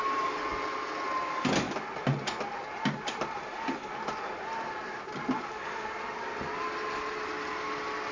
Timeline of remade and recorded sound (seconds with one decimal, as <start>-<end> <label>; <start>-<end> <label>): 0.0-8.1 recorded